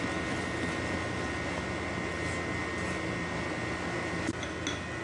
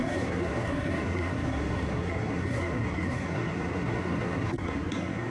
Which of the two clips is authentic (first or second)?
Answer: first